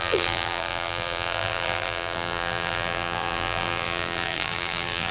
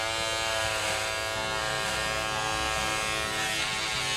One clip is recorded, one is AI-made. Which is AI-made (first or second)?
first